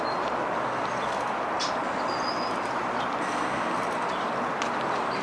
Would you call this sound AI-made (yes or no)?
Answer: no